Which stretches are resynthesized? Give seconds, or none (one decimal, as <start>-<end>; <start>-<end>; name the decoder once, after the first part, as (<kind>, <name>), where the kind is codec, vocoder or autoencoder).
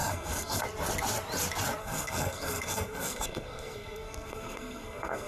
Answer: 0.0-0.6 (codec, SNAC); 1.8-5.3